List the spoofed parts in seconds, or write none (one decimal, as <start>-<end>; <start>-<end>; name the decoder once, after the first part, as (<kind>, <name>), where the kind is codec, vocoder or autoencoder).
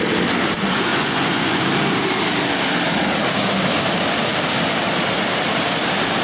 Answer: 0.9-1.6 (vocoder, Vocos)